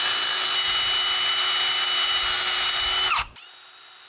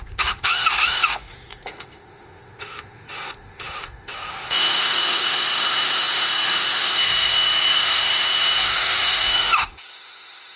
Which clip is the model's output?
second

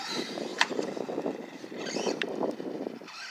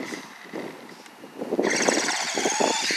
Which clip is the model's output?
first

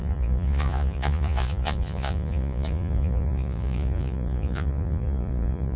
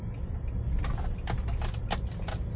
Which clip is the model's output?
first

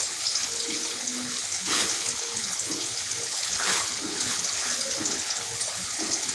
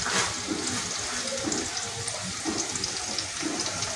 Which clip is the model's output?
first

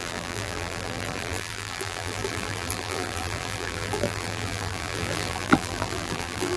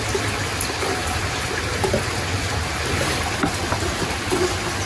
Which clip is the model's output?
first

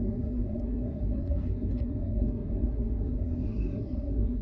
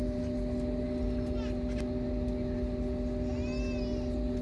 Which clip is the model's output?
first